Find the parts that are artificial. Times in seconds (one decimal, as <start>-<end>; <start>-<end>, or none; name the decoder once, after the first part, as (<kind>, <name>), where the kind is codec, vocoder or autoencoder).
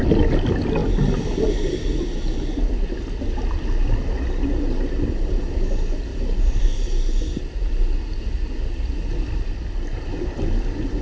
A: 6.1-6.7 (vocoder, BigVGAN v2)